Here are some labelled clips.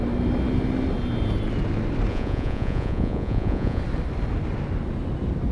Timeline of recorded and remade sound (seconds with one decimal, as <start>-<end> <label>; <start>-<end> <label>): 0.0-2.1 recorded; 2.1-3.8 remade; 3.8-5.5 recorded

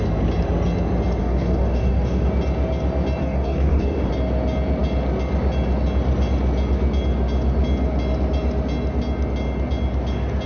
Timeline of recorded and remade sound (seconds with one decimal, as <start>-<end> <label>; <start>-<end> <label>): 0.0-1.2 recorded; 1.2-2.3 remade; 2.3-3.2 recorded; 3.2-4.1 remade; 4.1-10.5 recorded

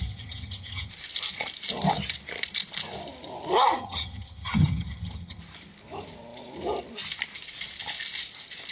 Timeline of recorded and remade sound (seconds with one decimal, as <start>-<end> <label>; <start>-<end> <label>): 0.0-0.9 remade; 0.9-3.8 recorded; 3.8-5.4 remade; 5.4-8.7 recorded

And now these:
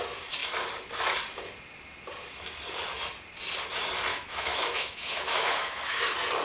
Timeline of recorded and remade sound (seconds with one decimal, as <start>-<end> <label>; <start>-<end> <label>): 0.0-4.1 recorded; 4.1-6.0 remade; 6.0-6.4 recorded